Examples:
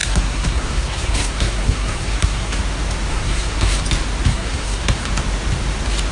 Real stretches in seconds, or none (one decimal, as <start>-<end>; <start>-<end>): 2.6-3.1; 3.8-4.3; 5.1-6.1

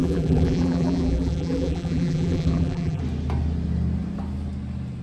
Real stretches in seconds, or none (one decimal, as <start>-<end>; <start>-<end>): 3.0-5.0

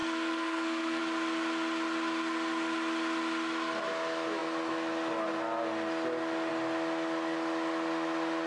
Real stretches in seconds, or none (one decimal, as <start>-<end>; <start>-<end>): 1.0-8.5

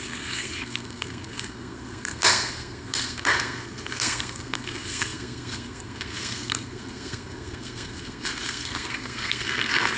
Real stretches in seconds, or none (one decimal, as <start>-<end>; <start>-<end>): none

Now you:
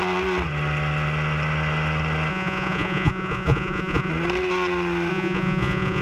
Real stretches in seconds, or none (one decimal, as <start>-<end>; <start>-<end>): 0.0-2.3; 4.1-5.1

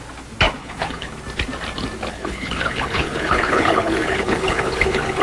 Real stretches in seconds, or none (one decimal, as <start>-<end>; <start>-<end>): 0.0-0.6; 1.1-2.1